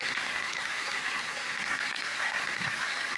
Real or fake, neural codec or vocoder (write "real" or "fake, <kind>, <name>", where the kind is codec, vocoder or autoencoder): fake, codec, SNAC